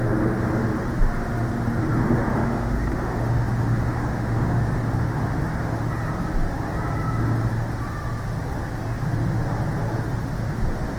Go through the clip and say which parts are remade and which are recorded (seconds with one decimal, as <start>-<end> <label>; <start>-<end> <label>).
0.0-2.3 recorded; 2.3-5.2 remade; 5.2-11.0 recorded